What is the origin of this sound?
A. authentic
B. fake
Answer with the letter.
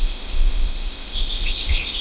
B